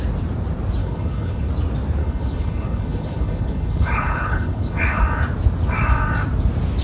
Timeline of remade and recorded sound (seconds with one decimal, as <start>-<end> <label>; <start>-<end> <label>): 0.0-0.8 recorded; 0.8-1.5 remade; 1.5-2.0 recorded; 2.0-5.0 remade; 5.0-6.8 recorded